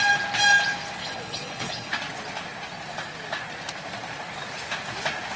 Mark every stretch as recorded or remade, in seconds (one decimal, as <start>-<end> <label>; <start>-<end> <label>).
0.0-1.0 recorded; 1.0-1.9 remade; 1.9-5.4 recorded